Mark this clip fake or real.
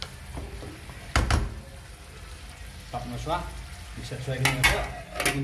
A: real